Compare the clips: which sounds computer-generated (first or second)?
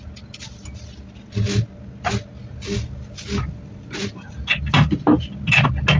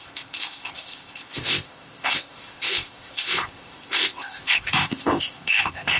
second